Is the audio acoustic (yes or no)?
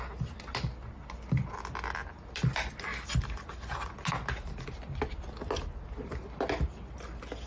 yes